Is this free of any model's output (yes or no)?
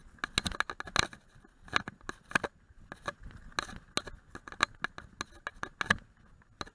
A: yes